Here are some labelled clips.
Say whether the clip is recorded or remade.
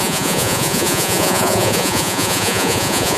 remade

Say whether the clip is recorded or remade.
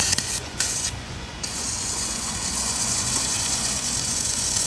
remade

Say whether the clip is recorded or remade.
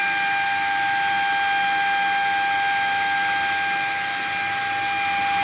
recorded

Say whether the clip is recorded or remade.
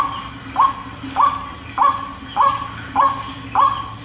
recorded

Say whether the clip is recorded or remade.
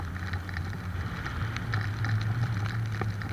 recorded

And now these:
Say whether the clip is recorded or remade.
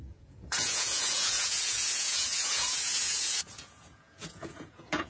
remade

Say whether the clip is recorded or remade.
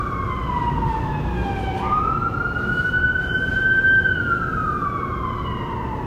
recorded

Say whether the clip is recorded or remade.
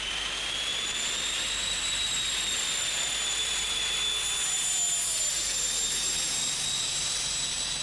recorded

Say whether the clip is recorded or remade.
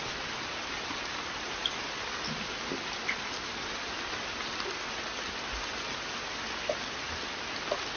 recorded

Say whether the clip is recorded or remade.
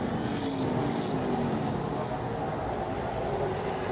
recorded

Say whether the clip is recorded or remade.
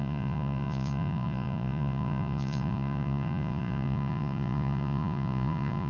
remade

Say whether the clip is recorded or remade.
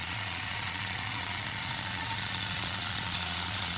remade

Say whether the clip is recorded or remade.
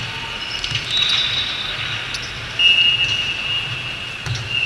recorded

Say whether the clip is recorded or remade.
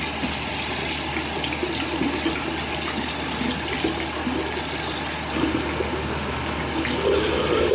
recorded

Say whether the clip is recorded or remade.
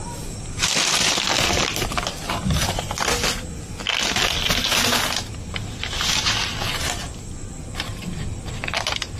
recorded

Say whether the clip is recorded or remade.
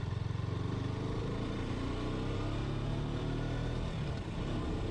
recorded